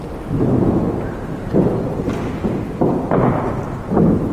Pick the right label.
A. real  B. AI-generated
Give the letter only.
A